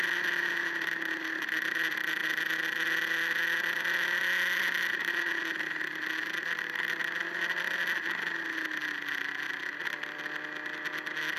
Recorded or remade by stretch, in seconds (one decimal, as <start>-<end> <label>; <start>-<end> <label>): 0.0-11.4 recorded